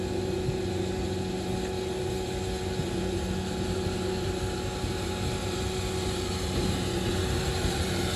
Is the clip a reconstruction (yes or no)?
no